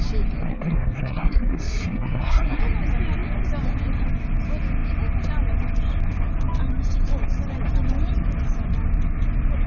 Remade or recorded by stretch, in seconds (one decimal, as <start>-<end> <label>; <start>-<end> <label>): 0.0-0.4 recorded; 0.4-2.6 remade; 2.6-9.7 recorded